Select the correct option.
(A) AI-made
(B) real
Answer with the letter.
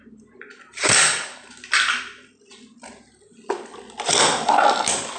B